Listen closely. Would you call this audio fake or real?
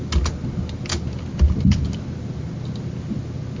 real